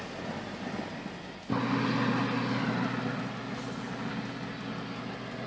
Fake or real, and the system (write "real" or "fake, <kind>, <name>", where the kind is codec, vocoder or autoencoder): real